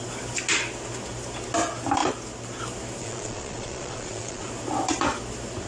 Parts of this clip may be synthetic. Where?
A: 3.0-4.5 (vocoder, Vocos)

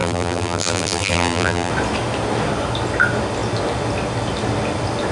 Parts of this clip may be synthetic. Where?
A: 0.0-1.7 (vocoder, BigVGAN v2)